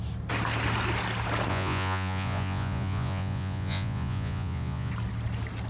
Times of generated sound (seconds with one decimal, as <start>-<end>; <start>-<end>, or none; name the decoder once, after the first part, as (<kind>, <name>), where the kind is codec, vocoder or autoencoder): 1.5-4.9 (vocoder, Vocos)